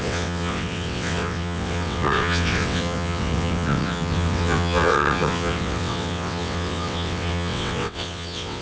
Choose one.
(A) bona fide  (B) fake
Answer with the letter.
B